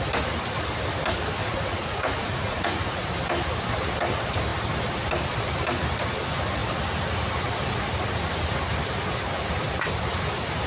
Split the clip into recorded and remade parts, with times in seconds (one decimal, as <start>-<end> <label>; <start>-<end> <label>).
0.0-1.4 recorded; 1.4-3.0 remade; 3.0-10.7 recorded